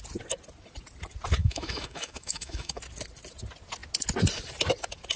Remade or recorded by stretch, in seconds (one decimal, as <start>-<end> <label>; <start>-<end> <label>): 0.0-1.4 recorded; 1.4-2.8 remade; 2.8-5.2 recorded